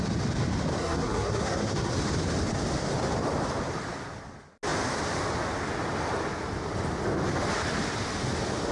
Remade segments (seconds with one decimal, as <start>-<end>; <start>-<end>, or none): 0.8-1.9

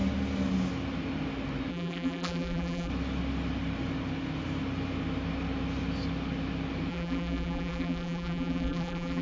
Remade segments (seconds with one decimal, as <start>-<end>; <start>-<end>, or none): 1.7-2.9; 6.9-9.2

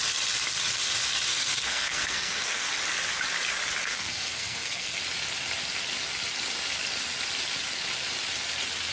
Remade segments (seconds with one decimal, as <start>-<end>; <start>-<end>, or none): 1.3-2.7; 3.8-5.0